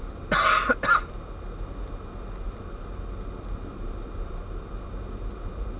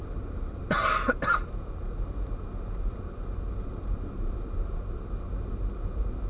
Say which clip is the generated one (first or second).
second